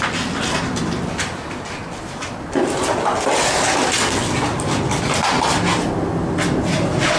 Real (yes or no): yes